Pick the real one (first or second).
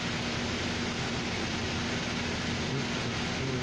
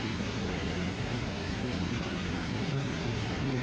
first